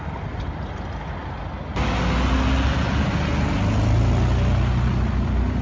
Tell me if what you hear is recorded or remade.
recorded